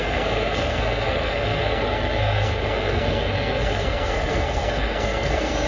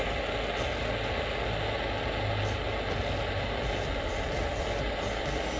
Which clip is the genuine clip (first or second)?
second